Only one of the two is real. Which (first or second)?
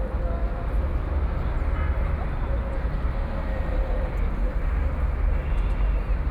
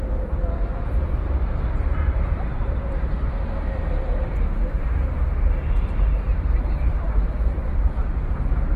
first